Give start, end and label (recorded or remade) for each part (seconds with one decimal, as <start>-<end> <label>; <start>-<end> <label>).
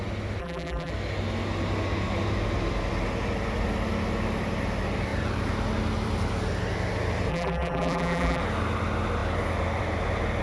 0.0-0.4 recorded; 0.4-0.9 remade; 0.9-7.3 recorded; 7.3-8.4 remade; 8.4-10.4 recorded